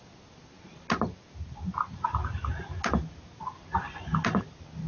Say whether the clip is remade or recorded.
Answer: recorded